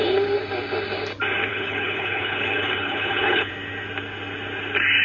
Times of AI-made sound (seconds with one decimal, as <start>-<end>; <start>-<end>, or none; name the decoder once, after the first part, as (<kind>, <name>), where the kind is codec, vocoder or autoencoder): 1.5-3.5 (codec, HILCodec)